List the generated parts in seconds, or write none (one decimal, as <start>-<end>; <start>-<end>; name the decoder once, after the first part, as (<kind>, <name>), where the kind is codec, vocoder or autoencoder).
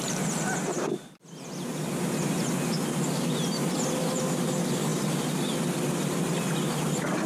none